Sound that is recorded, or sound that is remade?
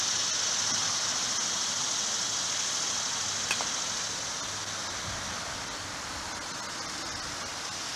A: recorded